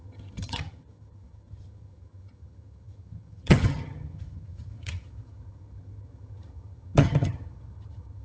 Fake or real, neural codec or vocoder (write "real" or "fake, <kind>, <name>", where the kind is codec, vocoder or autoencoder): fake, vocoder, HiFi-GAN